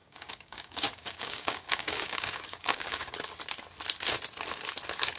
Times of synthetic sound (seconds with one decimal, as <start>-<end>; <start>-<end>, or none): 0.0-3.1